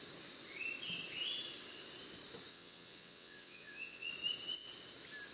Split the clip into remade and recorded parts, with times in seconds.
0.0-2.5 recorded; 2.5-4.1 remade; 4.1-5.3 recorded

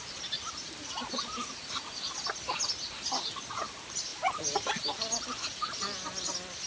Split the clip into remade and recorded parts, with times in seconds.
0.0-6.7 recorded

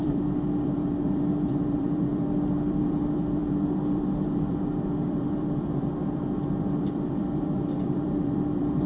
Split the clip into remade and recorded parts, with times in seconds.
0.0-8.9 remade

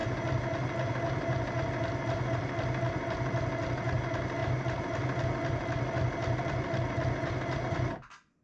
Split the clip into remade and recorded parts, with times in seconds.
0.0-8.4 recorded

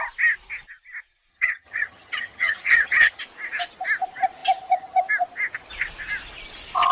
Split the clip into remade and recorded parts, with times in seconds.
0.0-1.3 recorded; 1.3-3.2 remade; 3.2-6.9 recorded

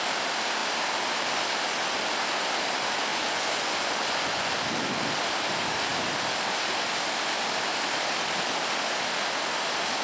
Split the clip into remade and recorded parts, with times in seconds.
0.0-3.1 recorded; 3.1-4.5 remade; 4.5-10.0 recorded